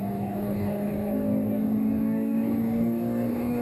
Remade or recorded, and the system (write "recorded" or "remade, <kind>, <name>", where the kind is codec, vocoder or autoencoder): remade, codec, DAC